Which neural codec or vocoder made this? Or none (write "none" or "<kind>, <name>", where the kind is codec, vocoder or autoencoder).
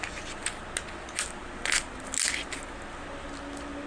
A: none